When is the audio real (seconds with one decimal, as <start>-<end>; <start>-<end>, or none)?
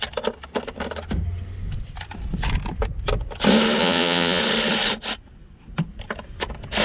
0.0-3.8; 4.4-6.8